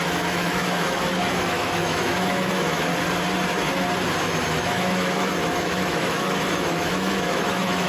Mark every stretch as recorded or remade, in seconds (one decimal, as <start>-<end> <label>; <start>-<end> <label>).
0.0-2.9 remade; 2.9-4.6 recorded; 4.6-7.9 remade